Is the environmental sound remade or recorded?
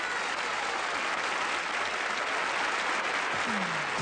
recorded